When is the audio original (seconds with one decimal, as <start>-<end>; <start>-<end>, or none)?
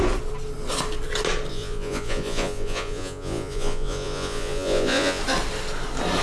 0.0-1.5; 5.2-6.2